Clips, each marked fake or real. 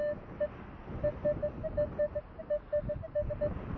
real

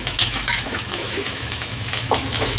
fake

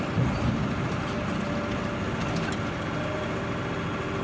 real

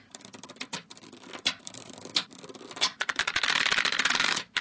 fake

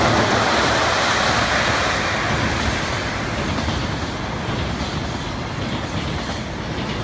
real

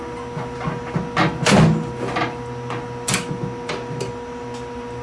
real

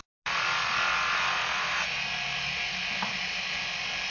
real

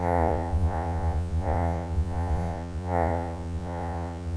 fake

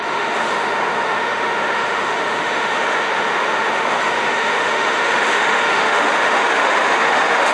fake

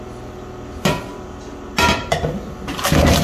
real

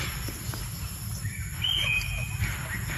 real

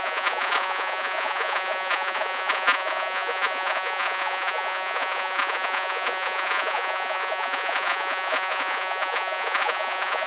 fake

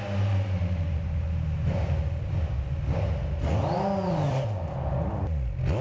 real